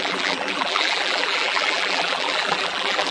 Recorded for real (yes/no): no